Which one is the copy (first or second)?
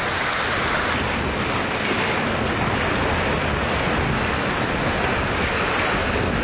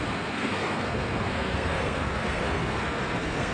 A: second